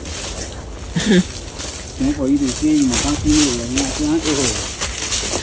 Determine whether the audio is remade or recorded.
recorded